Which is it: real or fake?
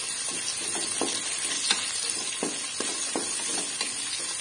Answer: real